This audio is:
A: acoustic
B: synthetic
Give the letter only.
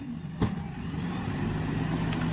A